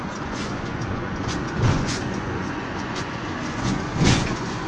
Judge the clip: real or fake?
fake